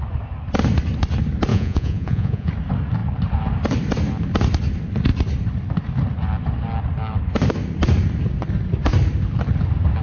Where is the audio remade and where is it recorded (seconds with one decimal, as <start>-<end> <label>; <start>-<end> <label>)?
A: 0.0-1.5 recorded; 1.5-2.5 remade; 2.5-10.0 recorded